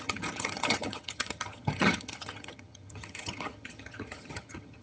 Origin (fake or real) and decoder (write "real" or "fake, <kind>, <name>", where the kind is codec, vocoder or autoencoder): fake, vocoder, HiFi-GAN